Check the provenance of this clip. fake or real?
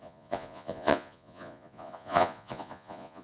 fake